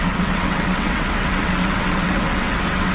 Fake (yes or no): yes